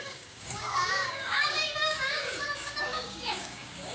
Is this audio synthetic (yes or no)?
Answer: yes